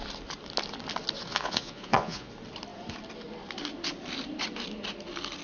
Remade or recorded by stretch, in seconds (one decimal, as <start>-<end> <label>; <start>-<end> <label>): 0.0-1.3 recorded; 1.3-2.3 remade; 2.3-5.4 recorded